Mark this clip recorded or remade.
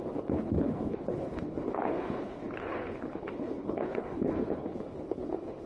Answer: remade